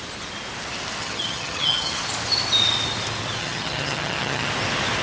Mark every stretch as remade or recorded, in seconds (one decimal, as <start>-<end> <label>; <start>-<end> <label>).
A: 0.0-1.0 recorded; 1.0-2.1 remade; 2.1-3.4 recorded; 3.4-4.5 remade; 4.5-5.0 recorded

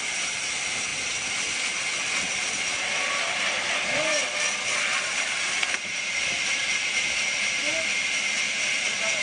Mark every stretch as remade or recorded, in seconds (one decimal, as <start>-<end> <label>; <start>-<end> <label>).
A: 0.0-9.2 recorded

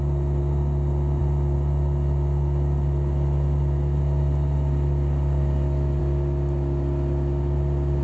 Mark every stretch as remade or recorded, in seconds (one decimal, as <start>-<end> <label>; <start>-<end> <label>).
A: 0.0-8.0 recorded

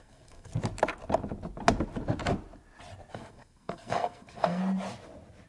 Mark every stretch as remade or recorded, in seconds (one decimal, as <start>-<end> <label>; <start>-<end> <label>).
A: 0.0-0.5 remade; 0.5-3.1 recorded; 3.1-4.6 remade; 4.6-5.5 recorded

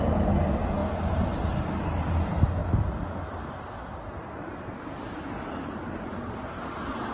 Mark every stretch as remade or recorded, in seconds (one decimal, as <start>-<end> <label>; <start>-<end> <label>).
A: 0.0-7.1 recorded

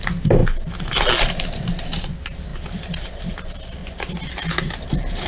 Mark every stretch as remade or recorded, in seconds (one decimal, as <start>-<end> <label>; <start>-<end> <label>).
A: 0.0-0.4 remade; 0.4-1.8 recorded; 1.8-3.8 remade; 3.8-4.6 recorded; 4.6-5.3 remade